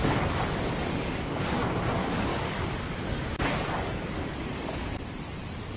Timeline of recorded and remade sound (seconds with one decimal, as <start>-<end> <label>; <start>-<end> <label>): 0.0-1.4 remade; 1.4-2.0 recorded; 2.0-5.0 remade; 5.0-5.8 recorded